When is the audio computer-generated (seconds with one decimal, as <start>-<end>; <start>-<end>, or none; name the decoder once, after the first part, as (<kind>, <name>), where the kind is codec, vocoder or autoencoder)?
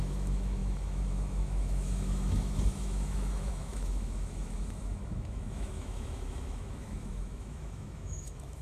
0.0-8.6 (autoencoder, DAC-VAE)